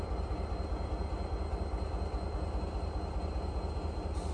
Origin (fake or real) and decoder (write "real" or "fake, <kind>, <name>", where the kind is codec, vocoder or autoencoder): real